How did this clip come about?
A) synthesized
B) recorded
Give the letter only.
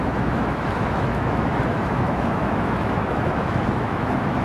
A